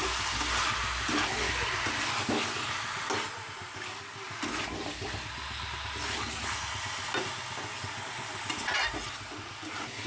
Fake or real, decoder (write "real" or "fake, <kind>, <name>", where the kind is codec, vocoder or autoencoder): real